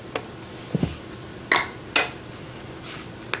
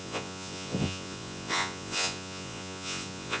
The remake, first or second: second